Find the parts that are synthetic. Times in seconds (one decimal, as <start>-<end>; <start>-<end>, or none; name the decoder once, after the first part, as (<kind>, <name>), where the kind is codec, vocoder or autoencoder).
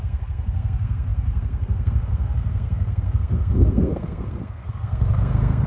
0.0-5.7 (codec, SNAC)